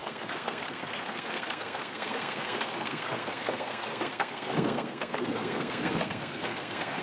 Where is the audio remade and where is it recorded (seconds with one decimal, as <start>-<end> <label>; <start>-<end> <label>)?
0.0-7.0 remade